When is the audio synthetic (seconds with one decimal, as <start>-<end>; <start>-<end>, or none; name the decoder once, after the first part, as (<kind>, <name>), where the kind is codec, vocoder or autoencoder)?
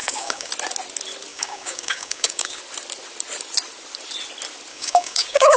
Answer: 0.0-0.5 (codec, DAC); 1.3-2.6; 4.7-5.6